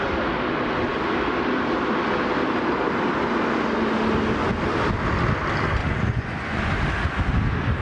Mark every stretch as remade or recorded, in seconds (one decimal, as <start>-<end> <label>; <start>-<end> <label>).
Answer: 0.0-5.8 recorded; 5.8-6.7 remade; 6.7-7.8 recorded